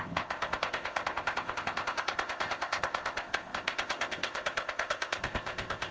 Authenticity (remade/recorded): remade